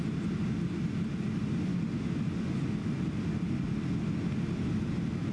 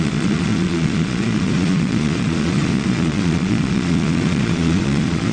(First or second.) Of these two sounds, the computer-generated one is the second